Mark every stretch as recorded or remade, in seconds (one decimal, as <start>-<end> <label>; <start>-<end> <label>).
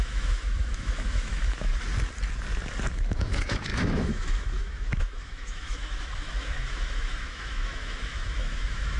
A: 0.0-1.7 remade; 1.7-2.9 recorded; 2.9-9.0 remade